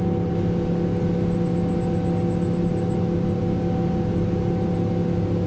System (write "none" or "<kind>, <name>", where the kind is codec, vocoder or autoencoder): none